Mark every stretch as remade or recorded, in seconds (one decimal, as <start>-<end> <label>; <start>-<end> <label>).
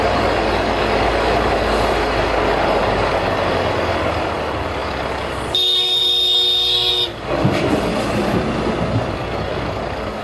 0.0-7.9 remade; 7.9-9.1 recorded; 9.1-10.2 remade